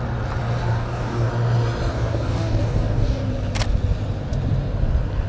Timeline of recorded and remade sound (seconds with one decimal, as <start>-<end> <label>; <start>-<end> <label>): 0.0-0.7 recorded; 0.7-1.3 remade; 1.3-1.9 recorded; 1.9-3.3 remade; 3.3-5.3 recorded